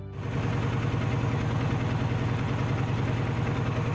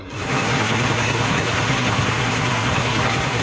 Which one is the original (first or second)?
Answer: first